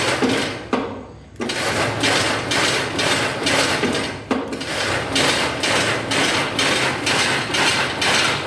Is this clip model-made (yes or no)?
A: no